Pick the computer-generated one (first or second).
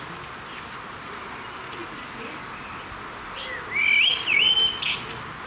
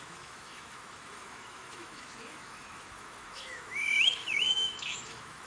second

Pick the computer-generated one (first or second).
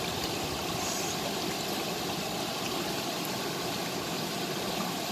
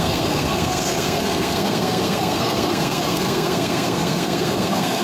second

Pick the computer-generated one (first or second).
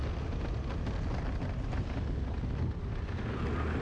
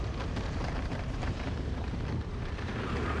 second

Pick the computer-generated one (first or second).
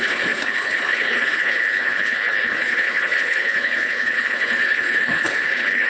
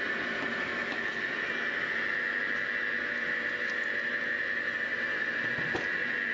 first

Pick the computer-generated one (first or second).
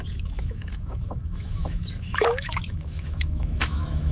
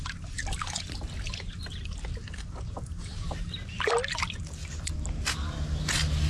first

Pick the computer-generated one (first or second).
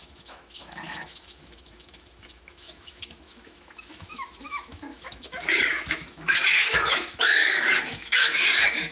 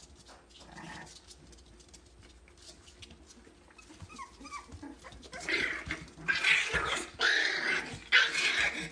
first